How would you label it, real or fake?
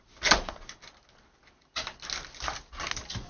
real